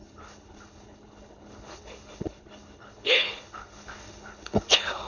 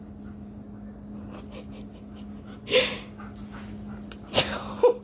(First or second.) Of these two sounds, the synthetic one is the first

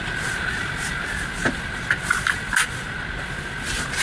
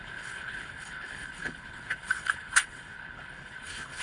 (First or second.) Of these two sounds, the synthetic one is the second